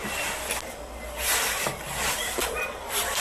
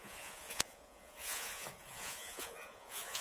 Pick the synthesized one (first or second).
second